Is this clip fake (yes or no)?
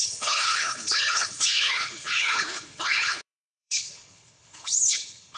yes